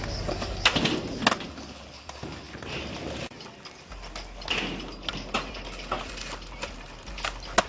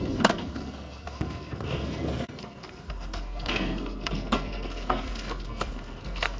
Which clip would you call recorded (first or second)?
first